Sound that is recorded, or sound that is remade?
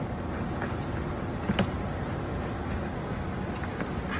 recorded